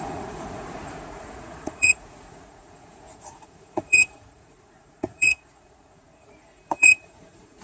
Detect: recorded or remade remade